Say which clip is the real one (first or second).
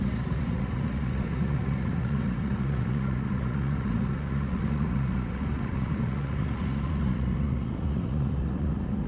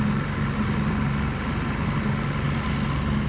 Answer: second